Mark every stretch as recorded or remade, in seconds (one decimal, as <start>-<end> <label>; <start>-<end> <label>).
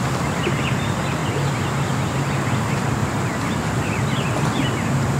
0.0-3.0 recorded; 3.0-4.0 remade; 4.0-5.2 recorded